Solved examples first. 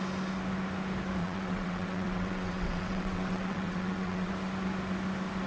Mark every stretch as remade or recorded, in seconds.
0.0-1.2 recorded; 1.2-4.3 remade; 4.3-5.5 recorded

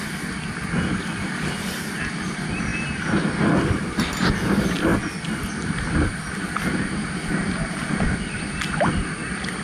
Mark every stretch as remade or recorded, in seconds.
0.0-9.6 recorded

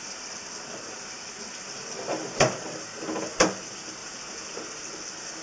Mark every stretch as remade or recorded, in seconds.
0.0-4.0 recorded; 4.0-4.5 remade; 4.5-5.4 recorded

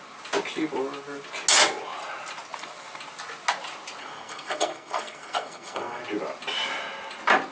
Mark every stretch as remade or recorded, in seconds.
0.0-4.0 recorded; 4.0-6.0 remade; 6.0-7.5 recorded

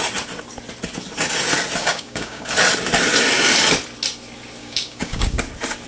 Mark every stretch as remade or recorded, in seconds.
0.0-1.8 recorded; 1.8-2.5 remade; 2.5-4.6 recorded; 4.6-5.4 remade; 5.4-5.9 recorded